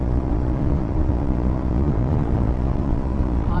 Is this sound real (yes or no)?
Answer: no